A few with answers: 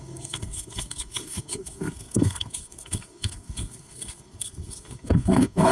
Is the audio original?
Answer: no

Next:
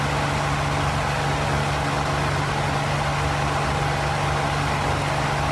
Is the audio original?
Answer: yes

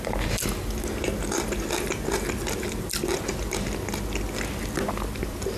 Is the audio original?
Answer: yes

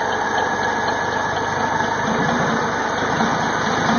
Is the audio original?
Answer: yes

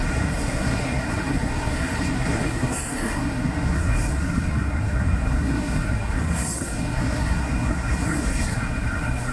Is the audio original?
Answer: no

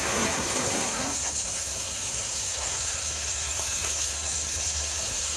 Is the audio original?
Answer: no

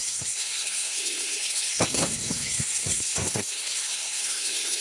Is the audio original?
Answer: no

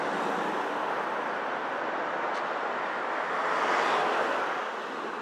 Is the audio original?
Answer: yes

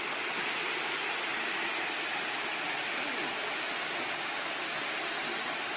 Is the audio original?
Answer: yes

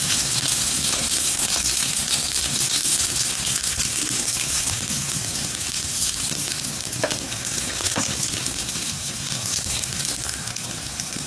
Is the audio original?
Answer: no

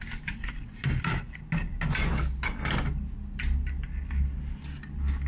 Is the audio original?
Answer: yes